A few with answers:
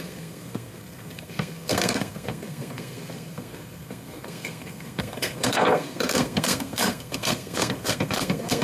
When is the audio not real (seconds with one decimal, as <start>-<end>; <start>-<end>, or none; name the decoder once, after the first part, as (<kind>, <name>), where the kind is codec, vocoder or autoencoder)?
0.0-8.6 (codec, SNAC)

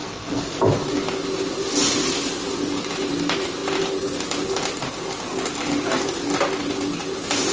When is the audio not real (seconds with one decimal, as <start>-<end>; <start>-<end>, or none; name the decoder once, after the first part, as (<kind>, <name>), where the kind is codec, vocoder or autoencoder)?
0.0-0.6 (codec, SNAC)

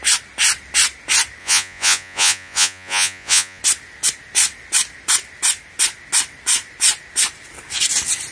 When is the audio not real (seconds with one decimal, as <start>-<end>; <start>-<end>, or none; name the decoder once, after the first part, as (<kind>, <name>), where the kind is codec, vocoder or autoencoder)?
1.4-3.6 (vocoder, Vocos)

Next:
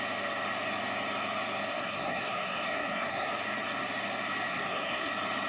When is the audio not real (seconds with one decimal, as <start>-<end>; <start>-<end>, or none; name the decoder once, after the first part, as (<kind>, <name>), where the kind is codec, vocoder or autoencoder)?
1.7-3.3 (codec, SNAC); 4.5-5.1

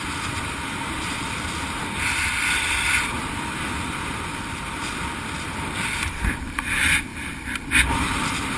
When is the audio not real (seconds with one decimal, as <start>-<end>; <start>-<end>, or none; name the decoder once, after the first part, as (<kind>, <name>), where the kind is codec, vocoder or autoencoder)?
none

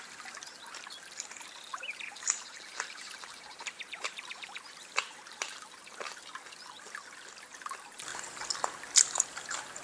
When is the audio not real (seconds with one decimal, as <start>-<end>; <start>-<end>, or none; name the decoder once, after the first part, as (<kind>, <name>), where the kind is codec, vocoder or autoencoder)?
1.7-6.2 (vocoder, BigVGAN v2)